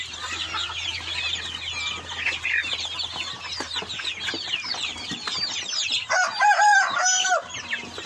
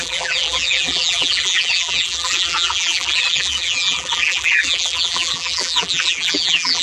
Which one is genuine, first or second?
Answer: first